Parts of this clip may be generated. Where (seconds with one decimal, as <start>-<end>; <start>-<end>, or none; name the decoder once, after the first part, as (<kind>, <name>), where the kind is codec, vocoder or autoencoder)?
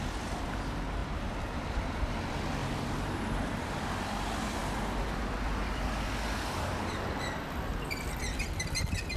1.0-2.1 (vocoder, BigVGAN v2); 2.6-3.6